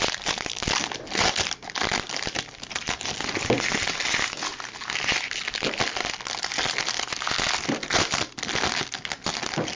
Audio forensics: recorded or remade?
recorded